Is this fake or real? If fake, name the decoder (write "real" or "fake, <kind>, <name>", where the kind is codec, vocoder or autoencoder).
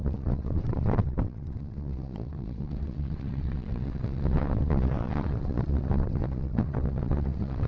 fake, vocoder, WaveNeXt